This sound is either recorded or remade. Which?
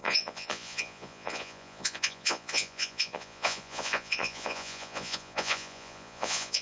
remade